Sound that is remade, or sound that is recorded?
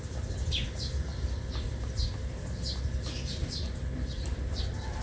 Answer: recorded